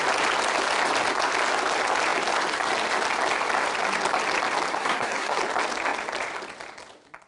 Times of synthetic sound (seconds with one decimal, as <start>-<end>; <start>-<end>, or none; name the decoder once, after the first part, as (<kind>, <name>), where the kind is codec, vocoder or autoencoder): 4.7-5.4 (codec, SNAC)